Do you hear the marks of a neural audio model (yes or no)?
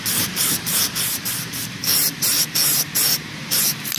yes